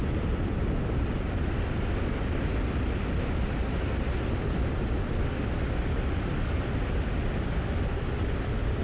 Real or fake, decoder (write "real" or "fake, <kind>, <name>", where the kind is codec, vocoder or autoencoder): real